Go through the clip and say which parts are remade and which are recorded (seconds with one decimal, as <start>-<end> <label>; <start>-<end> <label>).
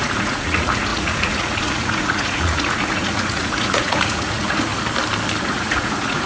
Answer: 0.0-4.7 remade; 4.7-5.4 recorded; 5.4-6.3 remade